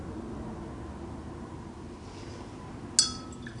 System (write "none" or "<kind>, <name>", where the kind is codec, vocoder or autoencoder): none